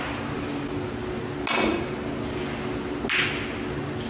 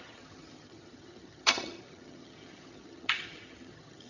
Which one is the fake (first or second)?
second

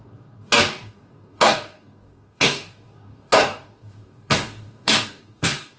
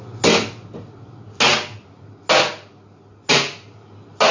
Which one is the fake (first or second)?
first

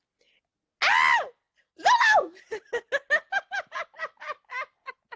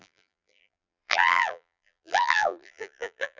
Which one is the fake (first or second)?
second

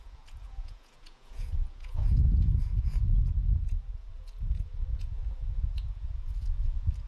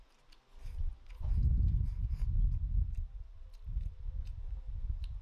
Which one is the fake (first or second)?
first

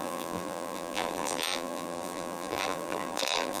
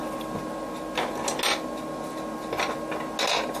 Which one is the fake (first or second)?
first